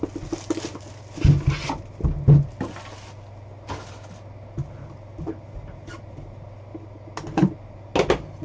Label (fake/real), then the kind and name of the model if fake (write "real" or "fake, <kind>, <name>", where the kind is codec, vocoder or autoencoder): real